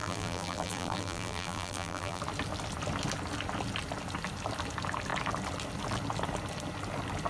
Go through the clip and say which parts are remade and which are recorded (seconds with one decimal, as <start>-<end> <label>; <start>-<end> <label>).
0.0-2.2 remade; 2.2-7.3 recorded